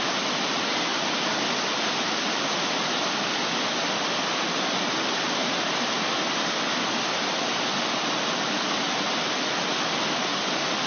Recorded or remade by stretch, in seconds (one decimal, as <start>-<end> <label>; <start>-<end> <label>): 0.0-10.9 recorded